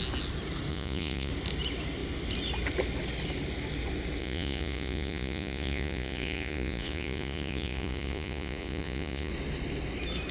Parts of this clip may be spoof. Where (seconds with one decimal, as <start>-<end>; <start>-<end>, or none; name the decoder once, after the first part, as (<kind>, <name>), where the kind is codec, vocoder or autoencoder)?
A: 0.7-1.3 (vocoder, Vocos); 4.2-9.3